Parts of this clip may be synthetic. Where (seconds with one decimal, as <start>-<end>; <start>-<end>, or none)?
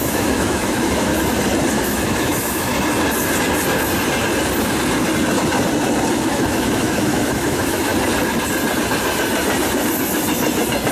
0.0-1.1; 1.7-2.7; 6.1-7.9